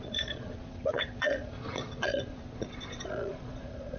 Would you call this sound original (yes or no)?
no